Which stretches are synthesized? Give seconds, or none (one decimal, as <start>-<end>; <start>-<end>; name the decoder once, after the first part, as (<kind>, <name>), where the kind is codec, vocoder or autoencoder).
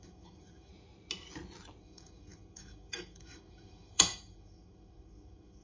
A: 0.0-0.7 (autoencoder, DAC-VAE); 1.8-5.6